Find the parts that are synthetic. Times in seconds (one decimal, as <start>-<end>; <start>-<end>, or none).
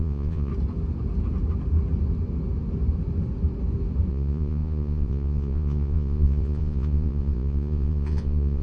0.0-0.5; 4.1-8.6